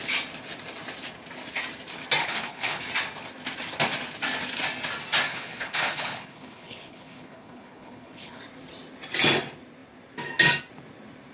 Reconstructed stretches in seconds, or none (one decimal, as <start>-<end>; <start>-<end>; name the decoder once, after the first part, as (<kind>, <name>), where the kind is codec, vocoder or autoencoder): 2.2-2.8 (codec, HILCodec); 5.3-8.4